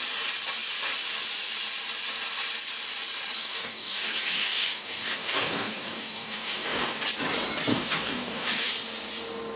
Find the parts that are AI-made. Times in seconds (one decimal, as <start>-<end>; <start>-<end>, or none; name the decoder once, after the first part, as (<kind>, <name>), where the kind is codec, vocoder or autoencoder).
3.4-7.0 (codec, DAC); 7.7-8.7